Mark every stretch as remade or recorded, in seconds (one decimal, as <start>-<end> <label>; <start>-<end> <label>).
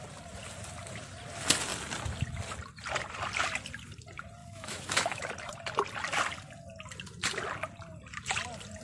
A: 0.0-4.4 recorded; 4.4-5.3 remade; 5.3-8.8 recorded